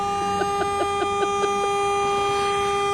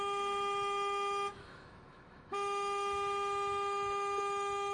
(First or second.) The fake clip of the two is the second